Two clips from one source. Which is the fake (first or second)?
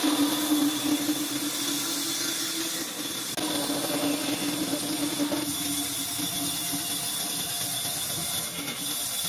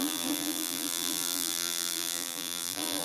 second